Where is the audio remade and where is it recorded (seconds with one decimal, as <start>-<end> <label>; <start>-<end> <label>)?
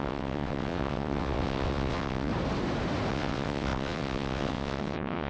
0.0-2.3 remade; 2.3-3.1 recorded; 3.1-5.3 remade